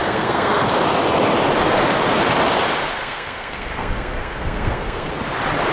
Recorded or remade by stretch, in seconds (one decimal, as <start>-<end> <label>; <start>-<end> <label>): 0.0-0.7 remade; 0.7-3.0 recorded; 3.0-5.1 remade; 5.1-5.7 recorded